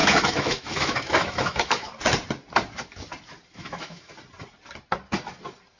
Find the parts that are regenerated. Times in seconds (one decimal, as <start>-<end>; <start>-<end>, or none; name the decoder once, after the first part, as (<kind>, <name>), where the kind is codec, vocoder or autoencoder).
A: 0.0-1.9 (autoencoder, DAC-VAE); 3.5-4.1